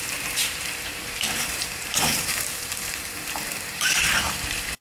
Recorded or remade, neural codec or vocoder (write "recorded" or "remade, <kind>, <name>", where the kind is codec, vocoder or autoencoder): remade, vocoder, BigVGAN v2